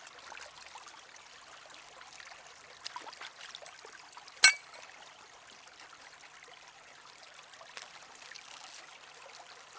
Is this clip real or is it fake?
real